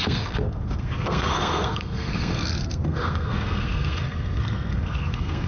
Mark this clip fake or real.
fake